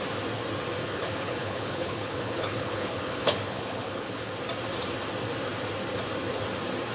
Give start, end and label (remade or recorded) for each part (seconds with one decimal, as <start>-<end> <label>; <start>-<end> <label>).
0.0-0.8 recorded; 0.8-4.3 remade; 4.3-6.9 recorded